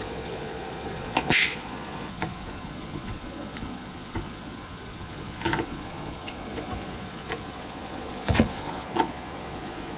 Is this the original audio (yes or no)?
no